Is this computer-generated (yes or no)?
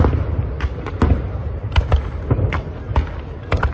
no